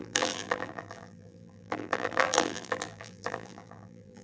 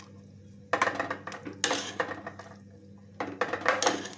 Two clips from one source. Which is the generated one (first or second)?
first